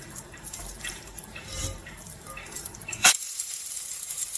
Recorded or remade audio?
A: remade